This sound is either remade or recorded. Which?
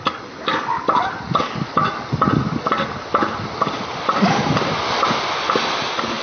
recorded